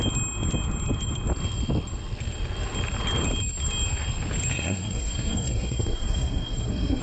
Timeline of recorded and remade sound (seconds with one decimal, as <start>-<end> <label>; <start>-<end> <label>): 0.0-4.5 recorded; 4.5-7.0 remade